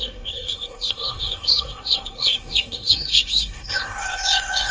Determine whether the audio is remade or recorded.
remade